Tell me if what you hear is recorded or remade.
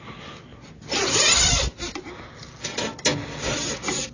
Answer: recorded